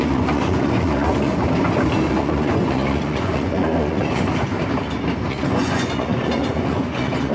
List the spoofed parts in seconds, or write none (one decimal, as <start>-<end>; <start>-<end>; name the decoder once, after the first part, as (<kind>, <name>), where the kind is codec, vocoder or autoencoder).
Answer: 0.0-1.3 (vocoder, Vocos); 2.1-4.3; 5.3-7.3